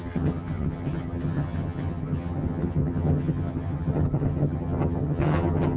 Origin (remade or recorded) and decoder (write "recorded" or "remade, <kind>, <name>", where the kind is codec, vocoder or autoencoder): remade, vocoder, HiFi-GAN